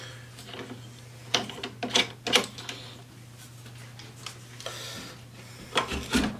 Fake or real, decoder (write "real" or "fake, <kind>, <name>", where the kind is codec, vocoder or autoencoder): real